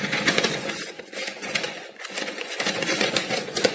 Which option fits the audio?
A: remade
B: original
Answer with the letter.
A